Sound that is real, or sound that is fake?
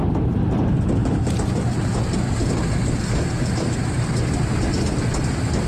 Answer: real